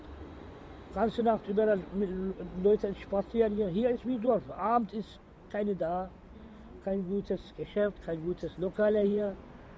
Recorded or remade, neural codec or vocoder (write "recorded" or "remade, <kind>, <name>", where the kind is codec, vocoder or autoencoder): remade, vocoder, Vocos